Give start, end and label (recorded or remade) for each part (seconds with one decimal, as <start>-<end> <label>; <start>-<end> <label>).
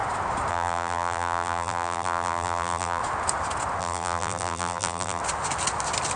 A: 0.0-0.5 recorded; 0.5-3.0 remade; 3.0-3.8 recorded; 3.8-5.2 remade; 5.2-6.2 recorded